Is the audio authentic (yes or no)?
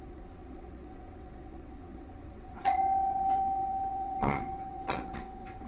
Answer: no